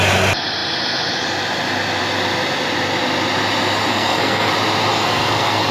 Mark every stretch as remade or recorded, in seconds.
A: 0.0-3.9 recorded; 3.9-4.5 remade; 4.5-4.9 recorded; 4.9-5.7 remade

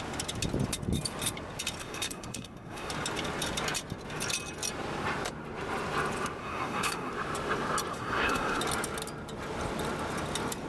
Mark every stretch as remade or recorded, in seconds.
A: 0.0-1.8 recorded; 1.8-2.9 remade; 2.9-6.4 recorded; 6.4-7.1 remade; 7.1-7.9 recorded; 7.9-8.6 remade; 8.6-10.7 recorded

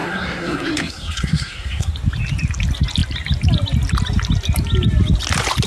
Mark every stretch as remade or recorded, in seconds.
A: 0.0-1.9 remade; 1.9-5.7 recorded

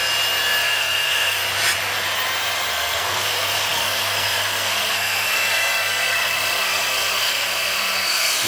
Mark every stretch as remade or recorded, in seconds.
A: 0.0-0.6 recorded; 0.6-1.4 remade; 1.4-2.7 recorded; 2.7-8.5 remade

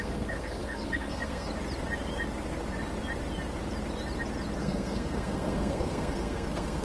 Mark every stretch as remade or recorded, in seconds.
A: 0.0-1.5 remade; 1.5-4.6 recorded; 4.6-6.8 remade

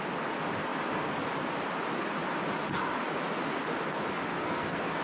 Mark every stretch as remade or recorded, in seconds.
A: 0.0-4.3 recorded; 4.3-5.0 remade

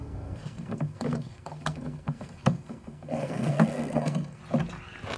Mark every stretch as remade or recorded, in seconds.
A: 0.0-4.4 remade; 4.4-5.2 recorded

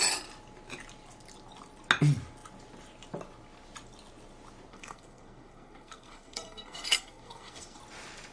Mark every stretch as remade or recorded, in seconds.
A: 0.0-4.7 recorded; 4.7-7.8 remade; 7.8-8.3 recorded